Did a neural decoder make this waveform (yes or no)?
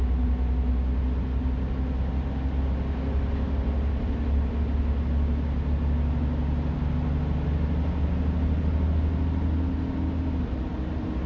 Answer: no